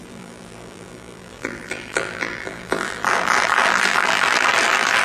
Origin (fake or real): fake